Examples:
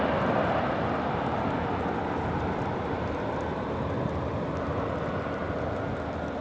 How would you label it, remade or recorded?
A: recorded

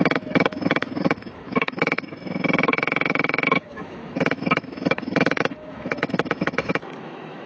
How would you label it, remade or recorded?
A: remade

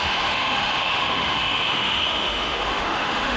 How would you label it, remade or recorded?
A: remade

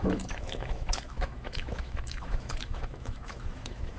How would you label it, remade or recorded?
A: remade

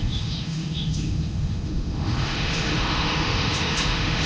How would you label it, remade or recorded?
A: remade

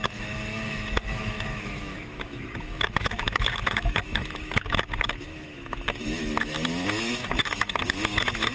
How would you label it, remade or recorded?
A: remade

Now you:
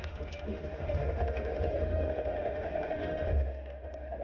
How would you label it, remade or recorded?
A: remade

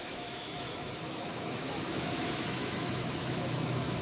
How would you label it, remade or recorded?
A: remade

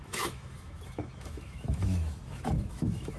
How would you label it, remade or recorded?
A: remade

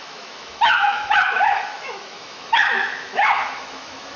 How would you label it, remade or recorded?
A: remade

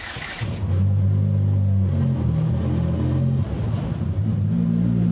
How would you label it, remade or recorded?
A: recorded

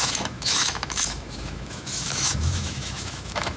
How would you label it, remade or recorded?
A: remade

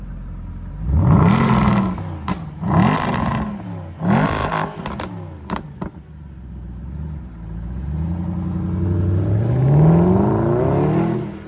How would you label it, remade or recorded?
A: recorded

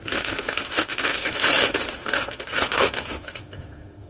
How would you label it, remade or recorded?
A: remade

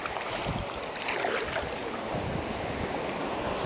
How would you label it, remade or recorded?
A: recorded